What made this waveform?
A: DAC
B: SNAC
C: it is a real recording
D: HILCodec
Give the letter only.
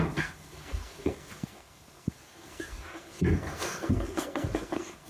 B